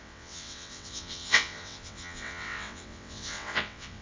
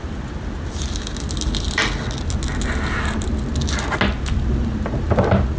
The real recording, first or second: second